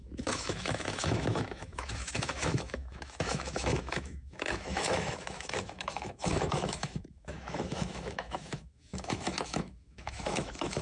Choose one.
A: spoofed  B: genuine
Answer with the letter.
A